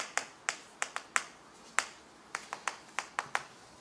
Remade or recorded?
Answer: recorded